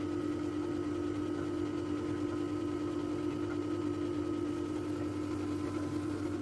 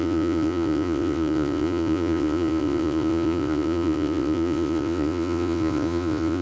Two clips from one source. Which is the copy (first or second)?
second